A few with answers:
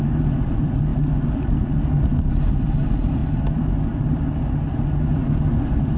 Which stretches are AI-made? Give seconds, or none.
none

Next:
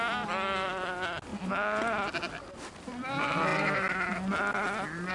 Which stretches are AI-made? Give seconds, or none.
none

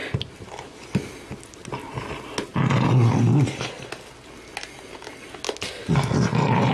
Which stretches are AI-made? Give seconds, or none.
0.0-0.7 (vocoder, BigVGAN v2)